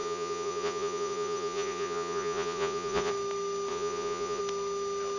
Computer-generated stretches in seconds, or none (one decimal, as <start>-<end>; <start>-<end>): 0.0-3.1; 3.7-4.4